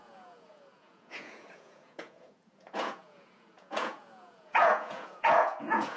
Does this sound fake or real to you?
fake